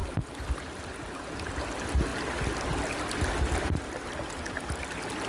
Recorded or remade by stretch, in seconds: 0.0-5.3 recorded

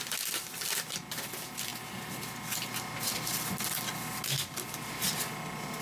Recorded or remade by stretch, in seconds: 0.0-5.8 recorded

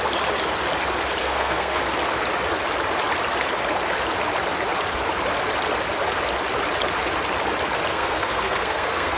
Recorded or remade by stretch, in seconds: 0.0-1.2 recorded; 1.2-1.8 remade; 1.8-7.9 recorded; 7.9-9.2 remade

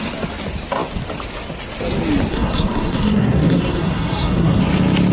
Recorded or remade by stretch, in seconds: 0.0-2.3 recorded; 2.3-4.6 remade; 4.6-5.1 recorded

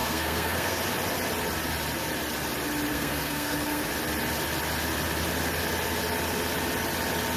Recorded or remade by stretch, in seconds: 0.0-0.8 remade; 0.8-2.9 recorded; 2.9-3.9 remade; 3.9-7.4 recorded

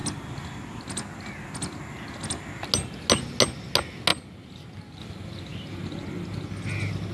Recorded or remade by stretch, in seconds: 0.0-7.1 recorded

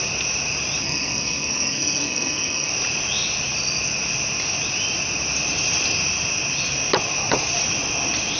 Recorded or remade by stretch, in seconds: 0.0-0.8 recorded; 0.8-2.7 remade; 2.7-8.4 recorded

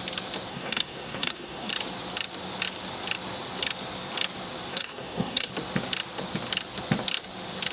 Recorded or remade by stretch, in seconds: 0.0-0.5 recorded; 0.5-1.7 remade; 1.7-4.7 recorded; 4.7-5.5 remade; 5.5-7.7 recorded